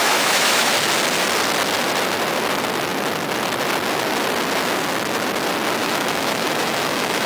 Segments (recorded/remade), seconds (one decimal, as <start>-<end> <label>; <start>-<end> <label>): 0.0-0.7 remade; 0.7-5.8 recorded; 5.8-7.3 remade